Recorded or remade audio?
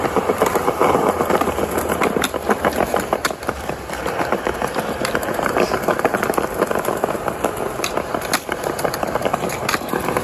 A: remade